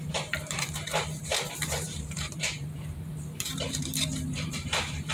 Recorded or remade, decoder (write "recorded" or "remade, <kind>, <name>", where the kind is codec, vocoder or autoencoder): remade, vocoder, BigVGAN v2